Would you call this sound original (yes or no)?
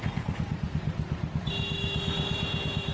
yes